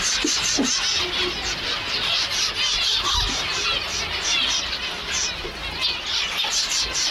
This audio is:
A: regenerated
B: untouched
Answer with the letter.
B